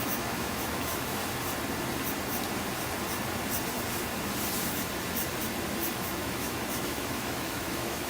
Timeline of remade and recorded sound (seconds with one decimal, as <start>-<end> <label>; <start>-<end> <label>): 0.0-1.2 remade; 1.2-5.9 recorded; 5.9-8.1 remade